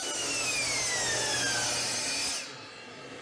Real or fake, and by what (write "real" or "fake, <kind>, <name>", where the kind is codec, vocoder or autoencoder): real